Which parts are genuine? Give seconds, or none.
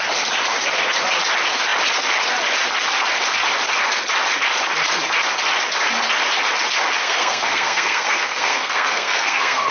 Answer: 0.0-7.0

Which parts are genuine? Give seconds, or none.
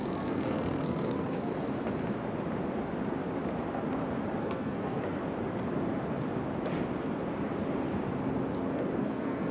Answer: 1.5-4.4; 5.2-9.0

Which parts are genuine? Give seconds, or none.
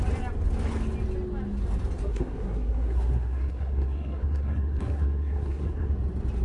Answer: 0.0-2.1; 5.9-6.4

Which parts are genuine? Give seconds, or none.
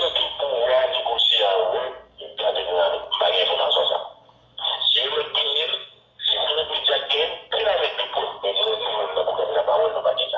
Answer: 0.0-5.4; 6.7-10.4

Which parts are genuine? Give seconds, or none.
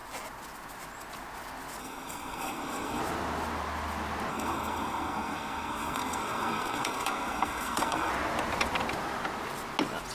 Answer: 0.0-1.8; 3.0-4.3; 8.1-10.1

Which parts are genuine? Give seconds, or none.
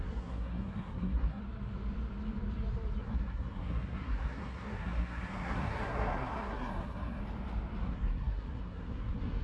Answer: 1.4-3.0; 7.2-7.8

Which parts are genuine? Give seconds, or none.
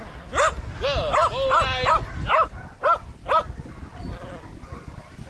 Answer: 0.0-5.3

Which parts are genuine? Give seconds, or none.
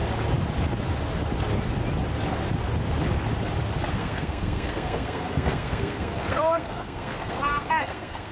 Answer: 0.0-3.9